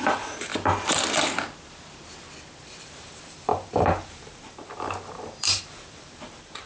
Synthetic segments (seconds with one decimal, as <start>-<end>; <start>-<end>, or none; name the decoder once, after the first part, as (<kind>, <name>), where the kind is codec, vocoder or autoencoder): 0.0-0.5 (vocoder, BigVGAN v2); 2.6-6.7